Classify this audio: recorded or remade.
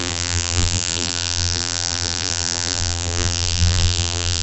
remade